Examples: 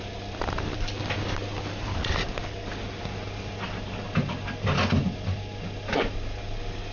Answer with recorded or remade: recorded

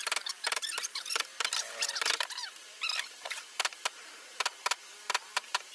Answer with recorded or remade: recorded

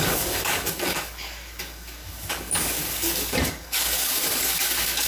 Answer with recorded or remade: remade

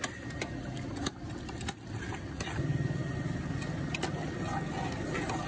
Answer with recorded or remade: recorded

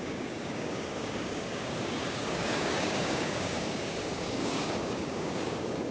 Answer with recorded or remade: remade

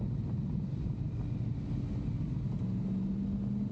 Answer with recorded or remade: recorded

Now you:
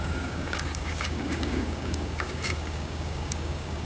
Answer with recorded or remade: remade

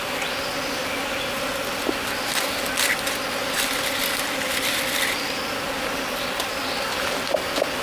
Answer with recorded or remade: recorded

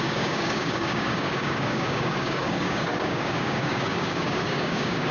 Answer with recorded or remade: remade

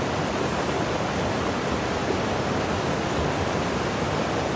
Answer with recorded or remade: recorded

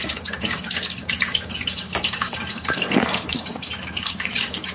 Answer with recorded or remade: remade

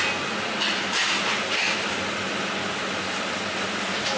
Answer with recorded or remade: recorded